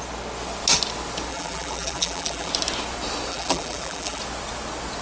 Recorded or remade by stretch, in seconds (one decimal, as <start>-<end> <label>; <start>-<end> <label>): 0.0-1.3 recorded; 1.3-2.5 remade; 2.5-3.3 recorded; 3.3-4.2 remade; 4.2-5.0 recorded